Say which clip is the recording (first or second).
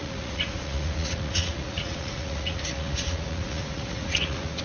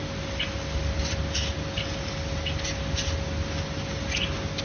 second